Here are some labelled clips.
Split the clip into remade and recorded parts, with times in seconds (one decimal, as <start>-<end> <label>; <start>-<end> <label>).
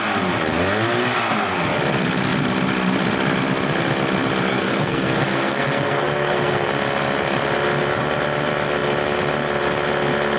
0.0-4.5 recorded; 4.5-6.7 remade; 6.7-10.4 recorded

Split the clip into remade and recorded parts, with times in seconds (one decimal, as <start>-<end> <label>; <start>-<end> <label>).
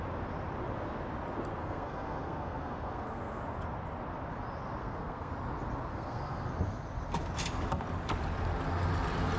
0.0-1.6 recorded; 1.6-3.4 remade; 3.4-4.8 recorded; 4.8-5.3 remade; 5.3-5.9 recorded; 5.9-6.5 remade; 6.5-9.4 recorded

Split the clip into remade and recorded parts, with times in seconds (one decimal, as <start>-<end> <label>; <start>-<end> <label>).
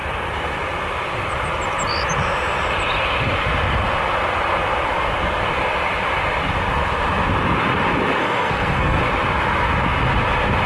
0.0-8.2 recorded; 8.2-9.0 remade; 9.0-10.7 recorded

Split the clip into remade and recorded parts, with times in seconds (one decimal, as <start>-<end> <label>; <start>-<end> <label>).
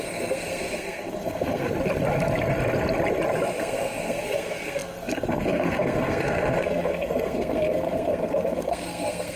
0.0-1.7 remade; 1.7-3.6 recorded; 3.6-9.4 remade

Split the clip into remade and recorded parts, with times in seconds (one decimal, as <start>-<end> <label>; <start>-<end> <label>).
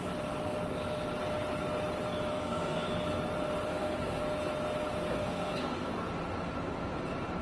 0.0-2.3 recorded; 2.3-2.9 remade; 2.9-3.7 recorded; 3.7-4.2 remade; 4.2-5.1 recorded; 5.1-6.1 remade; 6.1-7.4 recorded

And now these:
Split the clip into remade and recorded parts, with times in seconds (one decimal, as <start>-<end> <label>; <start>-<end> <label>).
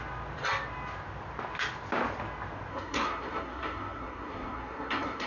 0.0-2.7 recorded; 2.7-5.3 remade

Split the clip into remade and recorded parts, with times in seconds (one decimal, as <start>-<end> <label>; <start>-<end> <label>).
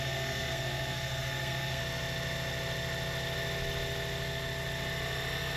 0.0-1.8 remade; 1.8-5.6 recorded